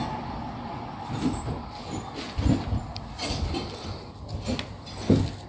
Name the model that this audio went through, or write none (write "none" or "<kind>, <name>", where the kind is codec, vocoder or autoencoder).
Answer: none